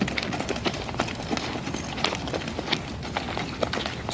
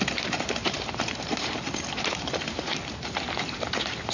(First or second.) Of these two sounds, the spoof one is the second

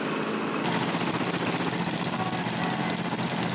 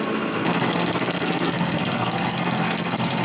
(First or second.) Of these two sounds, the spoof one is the second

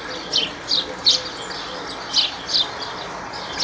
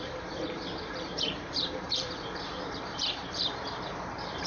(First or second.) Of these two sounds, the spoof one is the second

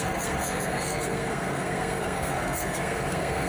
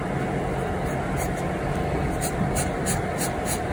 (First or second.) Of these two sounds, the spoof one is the first